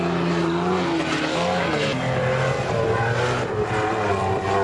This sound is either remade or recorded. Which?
recorded